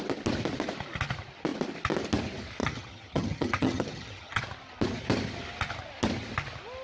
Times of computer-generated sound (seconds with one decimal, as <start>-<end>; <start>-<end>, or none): 2.6-4.4

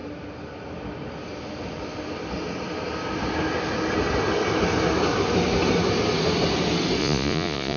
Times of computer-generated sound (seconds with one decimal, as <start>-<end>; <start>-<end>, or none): 7.0-7.8

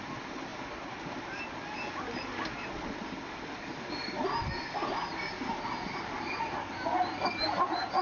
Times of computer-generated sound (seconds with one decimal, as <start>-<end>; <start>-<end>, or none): none

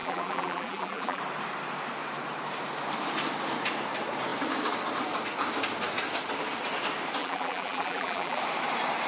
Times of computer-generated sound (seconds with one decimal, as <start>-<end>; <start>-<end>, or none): 0.0-1.2; 7.2-8.4

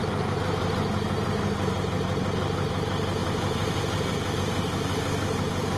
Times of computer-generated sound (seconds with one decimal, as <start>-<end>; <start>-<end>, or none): 3.2-4.4